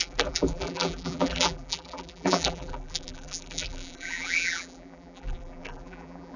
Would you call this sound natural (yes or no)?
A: no